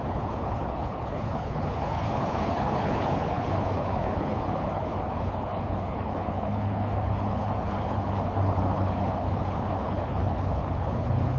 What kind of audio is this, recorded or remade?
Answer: remade